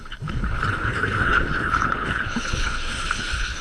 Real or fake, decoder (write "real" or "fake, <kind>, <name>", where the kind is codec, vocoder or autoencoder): fake, codec, HILCodec